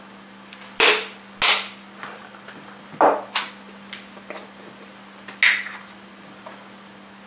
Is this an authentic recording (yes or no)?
yes